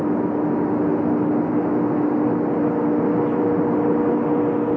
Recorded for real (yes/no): yes